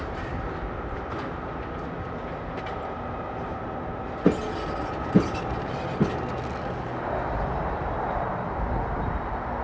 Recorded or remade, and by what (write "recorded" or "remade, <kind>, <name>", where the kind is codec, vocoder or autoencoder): recorded